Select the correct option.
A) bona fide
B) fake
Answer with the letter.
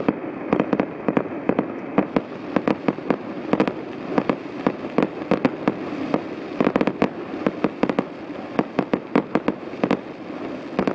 A